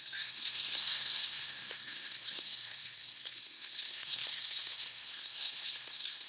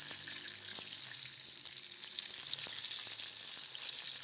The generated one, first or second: first